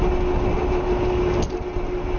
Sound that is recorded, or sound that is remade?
recorded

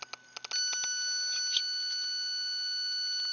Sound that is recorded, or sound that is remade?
recorded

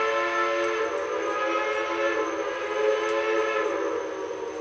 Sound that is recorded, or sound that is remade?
recorded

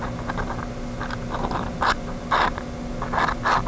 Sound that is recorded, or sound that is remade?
recorded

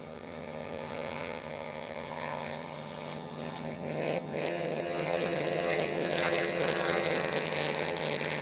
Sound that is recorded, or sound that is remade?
remade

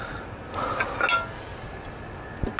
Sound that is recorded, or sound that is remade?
recorded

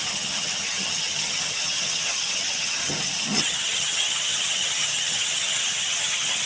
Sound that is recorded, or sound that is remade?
remade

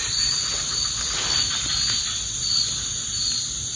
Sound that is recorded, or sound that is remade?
recorded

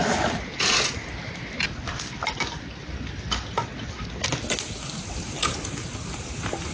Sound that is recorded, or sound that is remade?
recorded